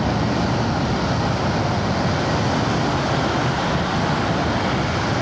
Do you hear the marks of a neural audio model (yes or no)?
no